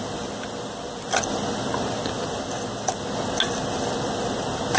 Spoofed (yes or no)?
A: no